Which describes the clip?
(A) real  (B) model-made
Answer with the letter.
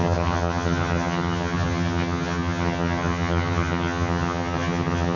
B